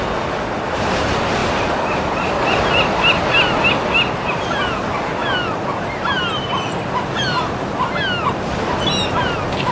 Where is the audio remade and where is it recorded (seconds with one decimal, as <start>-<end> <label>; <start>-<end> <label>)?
0.0-9.7 recorded